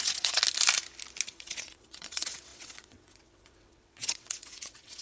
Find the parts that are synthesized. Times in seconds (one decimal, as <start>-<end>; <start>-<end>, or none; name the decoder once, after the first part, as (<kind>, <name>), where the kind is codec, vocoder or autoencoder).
0.0-0.4 (vocoder, WaveNeXt); 1.3-5.0